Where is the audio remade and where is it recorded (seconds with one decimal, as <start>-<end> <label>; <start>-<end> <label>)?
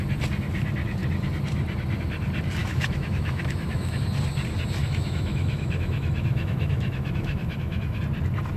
0.0-2.6 recorded; 2.6-4.0 remade; 4.0-4.8 recorded; 4.8-8.0 remade; 8.0-8.6 recorded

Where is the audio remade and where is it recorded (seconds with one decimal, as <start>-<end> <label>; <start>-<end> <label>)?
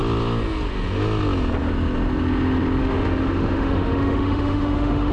0.0-2.8 recorded; 2.8-5.1 remade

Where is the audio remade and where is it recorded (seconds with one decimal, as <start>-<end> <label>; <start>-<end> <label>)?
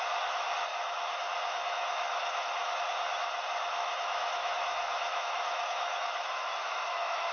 0.0-0.7 recorded; 0.7-2.8 remade; 2.8-3.8 recorded; 3.8-7.3 remade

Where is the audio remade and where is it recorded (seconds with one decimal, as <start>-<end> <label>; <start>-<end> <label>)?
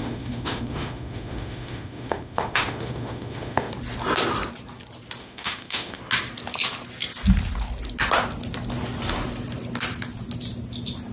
0.0-3.7 remade; 3.7-5.2 recorded; 5.2-6.0 remade; 6.0-11.1 recorded